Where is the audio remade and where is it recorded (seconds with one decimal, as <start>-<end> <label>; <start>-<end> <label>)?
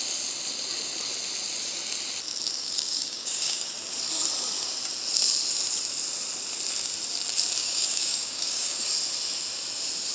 0.0-2.6 recorded; 2.6-3.7 remade; 3.7-7.6 recorded; 7.6-8.9 remade; 8.9-10.1 recorded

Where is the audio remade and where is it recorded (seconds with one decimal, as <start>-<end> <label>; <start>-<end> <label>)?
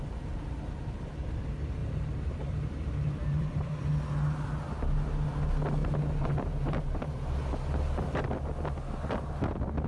0.0-1.8 recorded; 1.8-3.9 remade; 3.9-5.8 recorded; 5.8-7.5 remade; 7.5-9.9 recorded